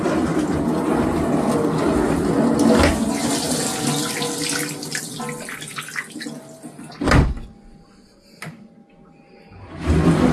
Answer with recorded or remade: recorded